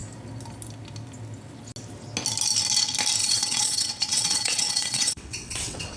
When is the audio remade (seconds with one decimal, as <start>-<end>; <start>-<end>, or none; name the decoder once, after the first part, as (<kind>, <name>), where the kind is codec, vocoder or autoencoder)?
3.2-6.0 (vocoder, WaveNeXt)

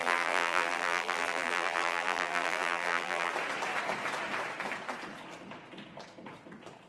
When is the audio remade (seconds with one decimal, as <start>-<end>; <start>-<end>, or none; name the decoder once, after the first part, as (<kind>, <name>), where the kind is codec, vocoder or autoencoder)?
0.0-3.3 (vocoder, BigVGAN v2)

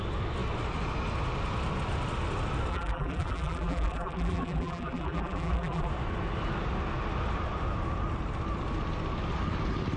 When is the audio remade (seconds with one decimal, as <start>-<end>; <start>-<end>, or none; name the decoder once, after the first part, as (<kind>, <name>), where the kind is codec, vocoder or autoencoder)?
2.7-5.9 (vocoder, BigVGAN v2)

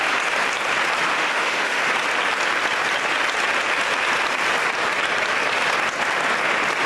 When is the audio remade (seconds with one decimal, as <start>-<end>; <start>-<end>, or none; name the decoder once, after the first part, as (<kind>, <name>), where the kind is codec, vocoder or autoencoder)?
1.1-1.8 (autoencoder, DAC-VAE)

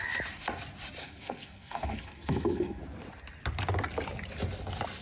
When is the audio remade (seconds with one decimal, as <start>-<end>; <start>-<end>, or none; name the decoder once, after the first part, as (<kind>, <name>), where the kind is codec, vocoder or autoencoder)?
1.0-2.8 (codec, SNAC)